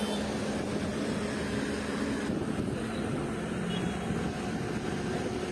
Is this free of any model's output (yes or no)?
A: yes